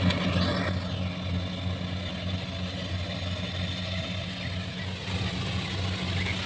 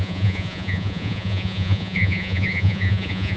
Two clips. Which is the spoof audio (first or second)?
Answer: second